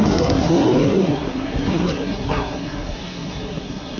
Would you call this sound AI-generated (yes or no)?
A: yes